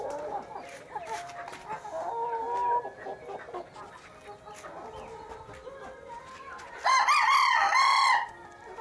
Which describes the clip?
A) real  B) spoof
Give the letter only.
A